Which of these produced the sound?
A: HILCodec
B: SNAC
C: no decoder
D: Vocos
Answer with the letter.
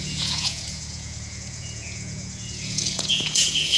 D